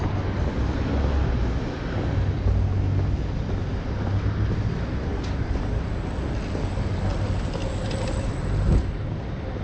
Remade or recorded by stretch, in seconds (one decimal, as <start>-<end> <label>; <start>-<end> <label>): 0.0-5.1 recorded; 5.1-5.8 remade; 5.8-9.6 recorded